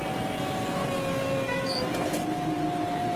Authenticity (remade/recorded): recorded